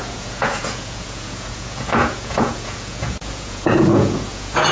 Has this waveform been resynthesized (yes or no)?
yes